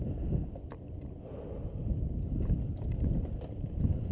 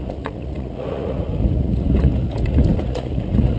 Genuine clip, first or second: first